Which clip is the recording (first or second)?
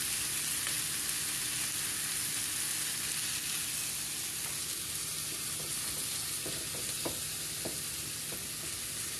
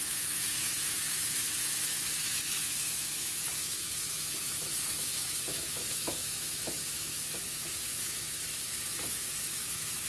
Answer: first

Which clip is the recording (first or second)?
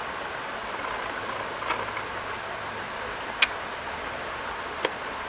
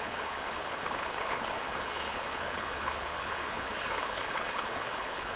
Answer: first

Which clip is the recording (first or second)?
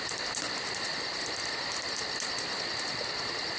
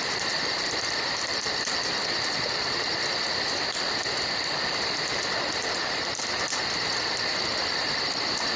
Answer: first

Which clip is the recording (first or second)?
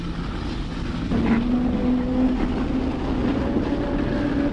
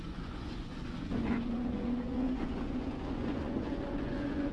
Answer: first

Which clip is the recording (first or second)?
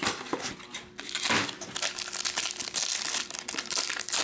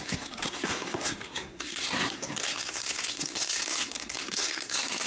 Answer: first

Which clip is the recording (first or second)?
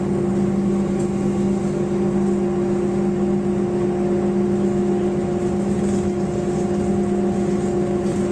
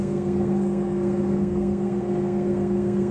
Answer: first